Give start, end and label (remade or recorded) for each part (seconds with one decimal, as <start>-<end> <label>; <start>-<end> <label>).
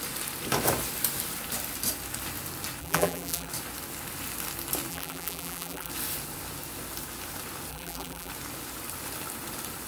0.0-2.8 recorded; 2.8-3.5 remade; 3.5-4.9 recorded; 4.9-5.9 remade; 5.9-7.7 recorded; 7.7-8.3 remade; 8.3-9.9 recorded